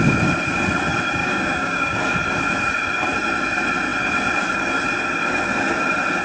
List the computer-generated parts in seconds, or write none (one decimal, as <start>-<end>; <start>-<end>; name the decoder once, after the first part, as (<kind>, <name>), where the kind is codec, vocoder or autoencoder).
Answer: 1.2-2.0 (codec, DAC)